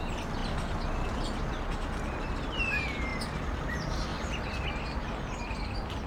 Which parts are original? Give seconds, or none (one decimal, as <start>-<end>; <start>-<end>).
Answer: 0.0-4.1; 4.7-6.1